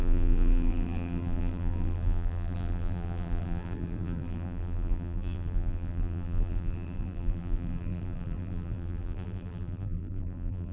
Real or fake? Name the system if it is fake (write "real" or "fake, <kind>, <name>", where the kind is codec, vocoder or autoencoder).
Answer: fake, vocoder, BigVGAN v2